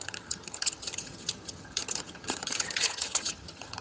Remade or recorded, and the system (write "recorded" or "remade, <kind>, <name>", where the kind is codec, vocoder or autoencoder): remade, vocoder, HiFi-GAN